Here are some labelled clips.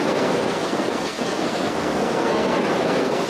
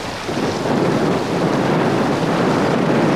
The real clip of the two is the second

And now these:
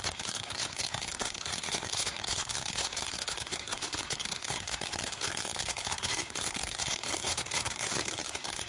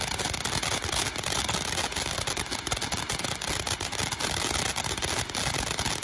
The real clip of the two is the second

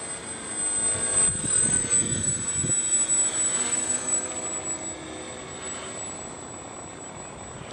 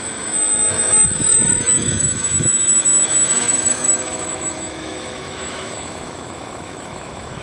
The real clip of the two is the first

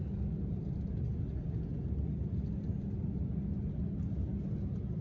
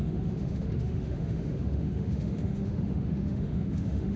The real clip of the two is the first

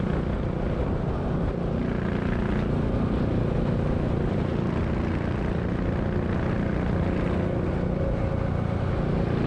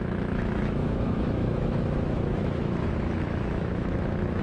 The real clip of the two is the first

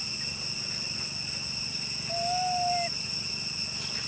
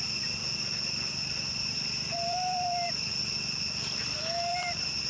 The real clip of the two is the first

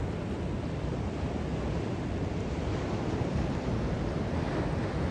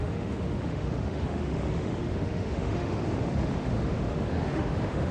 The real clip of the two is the first